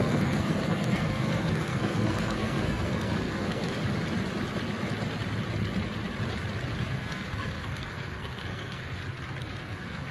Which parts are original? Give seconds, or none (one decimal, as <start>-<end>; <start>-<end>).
3.8-6.9; 9.0-9.6